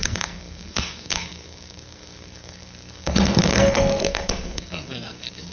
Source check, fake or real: fake